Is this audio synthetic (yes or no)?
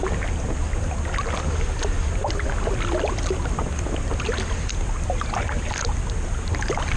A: no